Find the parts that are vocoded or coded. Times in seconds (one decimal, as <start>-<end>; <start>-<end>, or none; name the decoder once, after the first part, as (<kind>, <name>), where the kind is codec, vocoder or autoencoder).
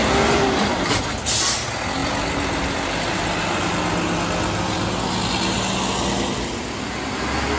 none